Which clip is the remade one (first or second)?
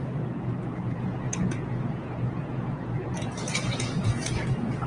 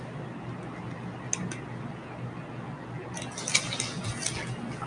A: first